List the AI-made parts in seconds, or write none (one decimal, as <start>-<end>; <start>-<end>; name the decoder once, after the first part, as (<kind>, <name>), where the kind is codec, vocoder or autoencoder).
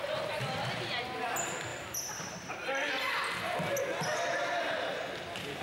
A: 1.7-2.5 (vocoder, BigVGAN v2); 4.9-5.6